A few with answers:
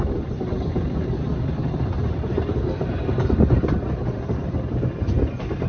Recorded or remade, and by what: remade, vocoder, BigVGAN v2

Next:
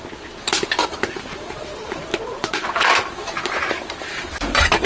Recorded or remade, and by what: remade, vocoder, BigVGAN v2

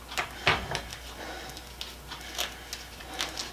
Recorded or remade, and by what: recorded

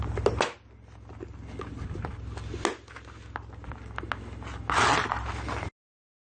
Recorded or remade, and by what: recorded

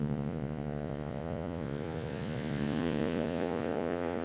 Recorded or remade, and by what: remade, vocoder, Vocos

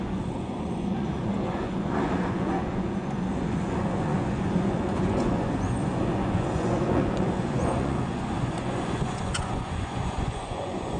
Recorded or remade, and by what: remade, vocoder, Vocos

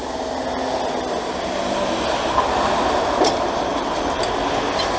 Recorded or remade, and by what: recorded